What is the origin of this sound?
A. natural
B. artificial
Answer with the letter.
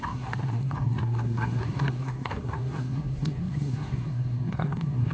B